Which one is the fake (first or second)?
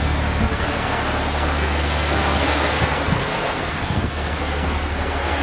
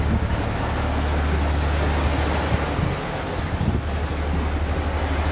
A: first